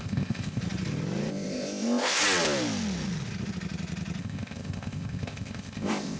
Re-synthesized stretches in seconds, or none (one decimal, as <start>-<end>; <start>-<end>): 0.0-0.6; 1.3-2.2; 4.2-6.2